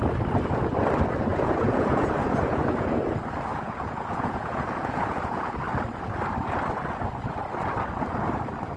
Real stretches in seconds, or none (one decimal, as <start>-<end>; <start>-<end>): 0.0-1.3; 3.0-3.5; 5.5-8.8